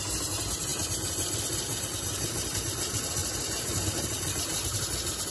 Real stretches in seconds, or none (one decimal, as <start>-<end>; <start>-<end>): 0.0-0.7; 1.3-5.3